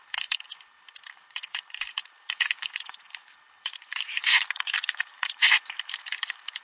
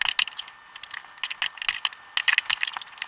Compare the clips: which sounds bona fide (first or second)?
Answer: second